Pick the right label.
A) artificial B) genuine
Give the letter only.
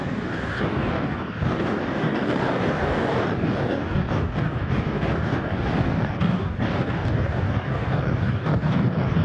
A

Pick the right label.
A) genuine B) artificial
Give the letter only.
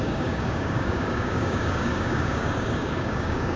B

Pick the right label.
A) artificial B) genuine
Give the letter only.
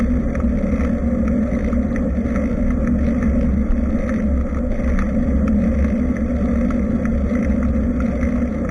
B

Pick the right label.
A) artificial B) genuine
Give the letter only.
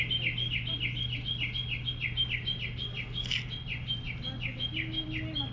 B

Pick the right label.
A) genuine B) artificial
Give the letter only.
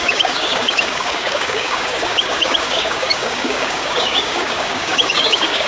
B